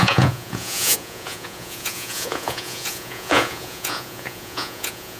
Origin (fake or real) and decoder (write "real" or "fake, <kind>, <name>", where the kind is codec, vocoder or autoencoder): fake, vocoder, Vocos